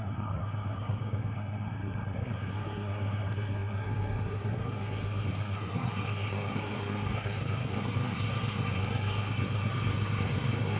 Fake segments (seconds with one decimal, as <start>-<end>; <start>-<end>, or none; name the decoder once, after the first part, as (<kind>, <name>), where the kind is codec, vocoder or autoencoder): 0.0-10.8 (codec, SNAC)